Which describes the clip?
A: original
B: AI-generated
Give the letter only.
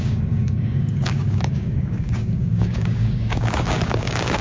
B